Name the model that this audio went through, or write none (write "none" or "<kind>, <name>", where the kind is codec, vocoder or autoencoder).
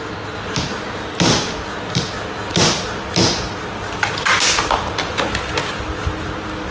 none